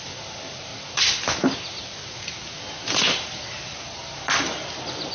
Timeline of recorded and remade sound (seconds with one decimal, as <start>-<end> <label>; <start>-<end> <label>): 0.0-5.1 recorded